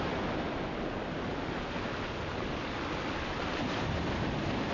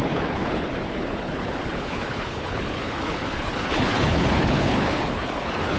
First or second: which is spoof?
second